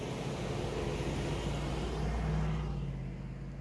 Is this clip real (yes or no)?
yes